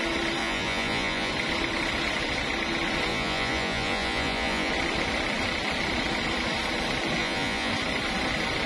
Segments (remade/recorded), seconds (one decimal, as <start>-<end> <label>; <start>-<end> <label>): 0.0-0.4 recorded; 0.4-1.3 remade; 1.3-3.1 recorded; 3.1-4.7 remade; 4.7-7.2 recorded; 7.2-7.7 remade; 7.7-8.7 recorded